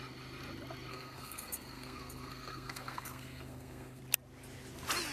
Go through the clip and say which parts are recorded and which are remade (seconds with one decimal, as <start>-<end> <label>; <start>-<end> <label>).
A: 0.0-0.9 recorded; 0.9-4.0 remade; 4.0-5.1 recorded